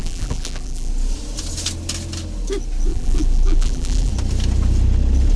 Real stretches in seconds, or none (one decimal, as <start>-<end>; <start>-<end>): 0.9-2.9; 4.1-5.4